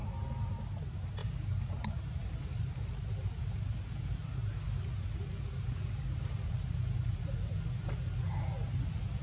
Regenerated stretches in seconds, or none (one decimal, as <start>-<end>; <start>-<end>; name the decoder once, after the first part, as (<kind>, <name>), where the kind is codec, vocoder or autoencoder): 1.2-3.6 (vocoder, BigVGAN v2); 4.2-7.5